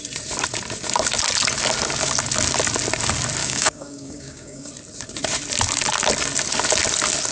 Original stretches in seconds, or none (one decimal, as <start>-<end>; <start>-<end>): 0.0-3.4; 4.7-7.3